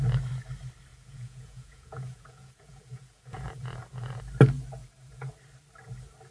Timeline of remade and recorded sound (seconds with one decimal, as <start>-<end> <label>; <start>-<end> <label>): 0.0-0.9 recorded; 0.9-4.2 remade; 4.2-4.8 recorded; 4.8-5.3 remade; 5.3-6.3 recorded